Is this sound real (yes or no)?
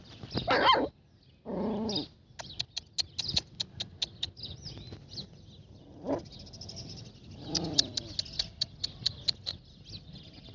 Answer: yes